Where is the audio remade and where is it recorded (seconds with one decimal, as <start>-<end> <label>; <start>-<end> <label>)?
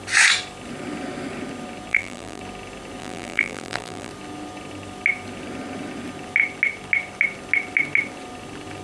0.0-1.9 recorded; 1.9-2.4 remade; 2.4-3.0 recorded; 3.0-4.1 remade; 4.1-8.8 recorded